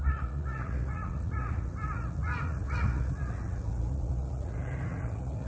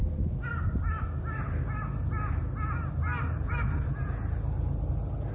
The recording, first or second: second